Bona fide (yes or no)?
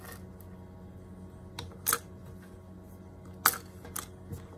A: yes